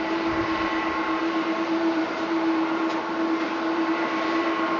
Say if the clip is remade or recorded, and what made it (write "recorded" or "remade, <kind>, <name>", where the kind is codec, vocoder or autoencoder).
remade, vocoder, BigVGAN v2